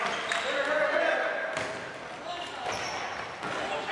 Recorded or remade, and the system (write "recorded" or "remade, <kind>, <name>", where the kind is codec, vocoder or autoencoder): recorded